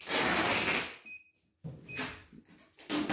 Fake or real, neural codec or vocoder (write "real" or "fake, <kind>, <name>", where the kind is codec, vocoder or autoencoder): real